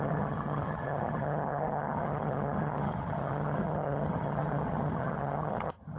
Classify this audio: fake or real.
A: fake